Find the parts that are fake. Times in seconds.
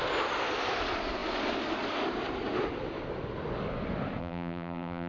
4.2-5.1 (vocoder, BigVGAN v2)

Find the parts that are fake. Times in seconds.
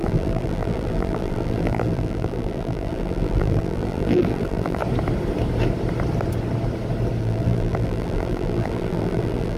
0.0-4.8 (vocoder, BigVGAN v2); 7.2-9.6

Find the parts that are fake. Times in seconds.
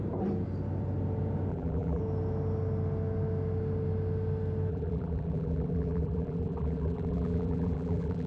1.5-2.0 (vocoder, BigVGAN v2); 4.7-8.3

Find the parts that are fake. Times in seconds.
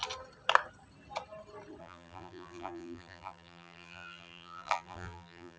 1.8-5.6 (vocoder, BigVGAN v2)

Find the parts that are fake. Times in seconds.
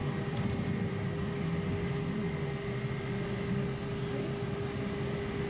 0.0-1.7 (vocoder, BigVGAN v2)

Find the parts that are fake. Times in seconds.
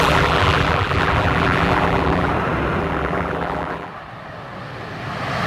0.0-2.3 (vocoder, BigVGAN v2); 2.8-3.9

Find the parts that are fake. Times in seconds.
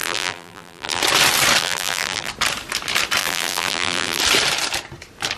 0.0-1.0 (vocoder, BigVGAN v2); 1.6-2.3; 3.2-4.2